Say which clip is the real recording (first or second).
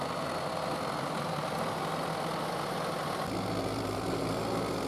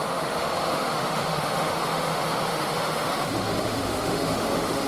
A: first